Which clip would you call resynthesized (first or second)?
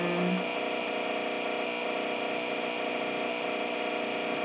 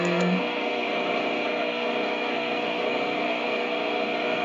second